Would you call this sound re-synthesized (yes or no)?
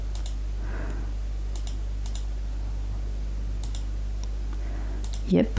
no